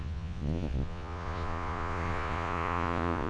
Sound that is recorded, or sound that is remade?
remade